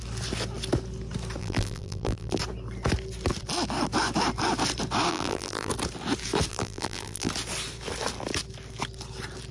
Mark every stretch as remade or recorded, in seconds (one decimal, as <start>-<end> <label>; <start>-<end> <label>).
0.0-1.4 recorded; 1.4-2.4 remade; 2.4-5.1 recorded; 5.1-5.7 remade; 5.7-6.5 recorded; 6.5-7.3 remade; 7.3-9.5 recorded